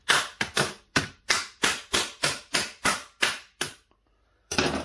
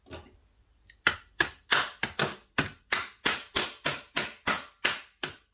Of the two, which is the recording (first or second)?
second